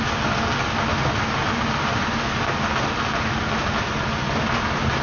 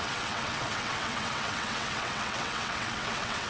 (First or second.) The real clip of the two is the first